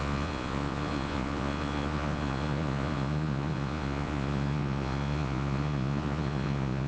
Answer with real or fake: fake